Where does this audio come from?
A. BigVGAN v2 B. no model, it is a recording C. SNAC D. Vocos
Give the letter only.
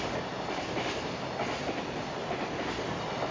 B